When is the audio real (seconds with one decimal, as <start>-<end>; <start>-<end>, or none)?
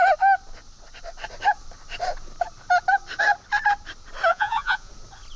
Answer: 0.0-4.3; 4.9-5.4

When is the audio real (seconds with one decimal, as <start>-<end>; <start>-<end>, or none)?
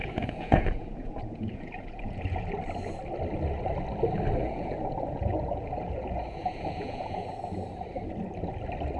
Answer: 2.5-4.4; 7.4-9.0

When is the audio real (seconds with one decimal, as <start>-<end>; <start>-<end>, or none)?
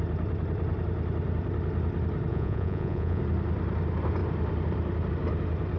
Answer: 0.0-2.3; 3.2-5.8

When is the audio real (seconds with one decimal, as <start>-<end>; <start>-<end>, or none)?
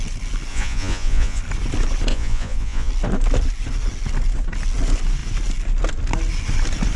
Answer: 0.0-0.5; 1.4-2.1; 2.9-7.0